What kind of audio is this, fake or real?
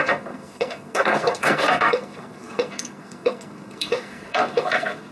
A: fake